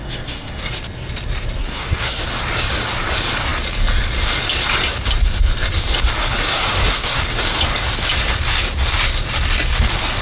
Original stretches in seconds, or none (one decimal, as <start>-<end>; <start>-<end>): 0.6-1.6; 2.2-6.5; 7.2-10.2